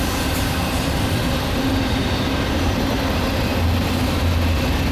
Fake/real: real